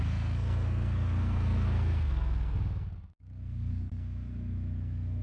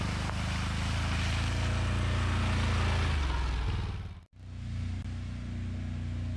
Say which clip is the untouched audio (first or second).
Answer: second